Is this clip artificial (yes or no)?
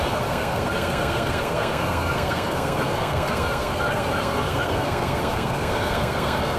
yes